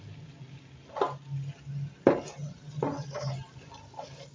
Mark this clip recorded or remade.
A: recorded